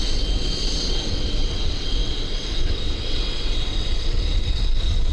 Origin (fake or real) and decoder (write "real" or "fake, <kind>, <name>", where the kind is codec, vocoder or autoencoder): fake, vocoder, WaveNeXt